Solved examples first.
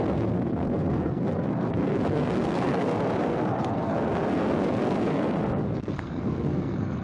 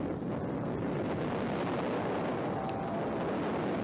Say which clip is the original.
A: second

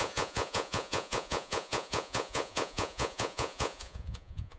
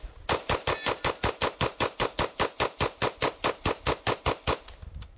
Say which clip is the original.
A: second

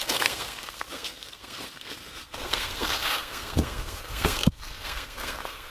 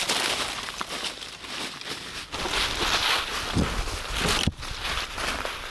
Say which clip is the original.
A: second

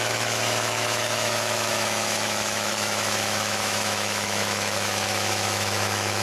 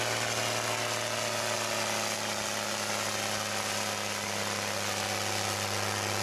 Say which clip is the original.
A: second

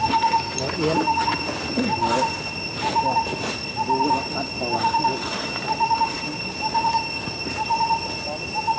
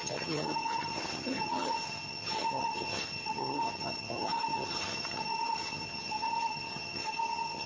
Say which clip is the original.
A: first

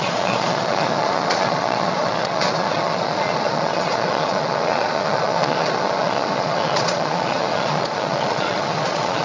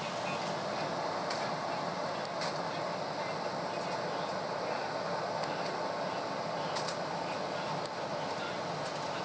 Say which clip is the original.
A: second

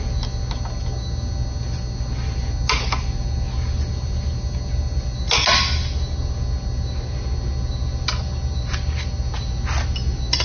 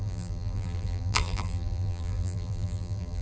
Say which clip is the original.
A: first